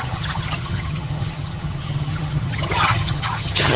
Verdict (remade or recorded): remade